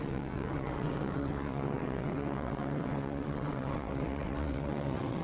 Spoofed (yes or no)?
yes